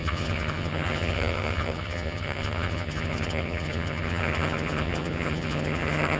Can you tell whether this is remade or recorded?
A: remade